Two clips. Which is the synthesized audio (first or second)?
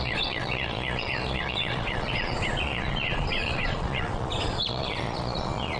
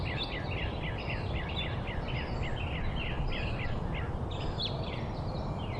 first